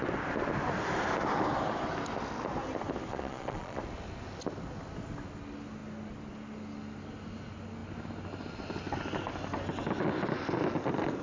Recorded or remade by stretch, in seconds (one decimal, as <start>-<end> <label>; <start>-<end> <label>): 0.0-3.1 recorded; 3.1-3.8 remade; 3.8-11.2 recorded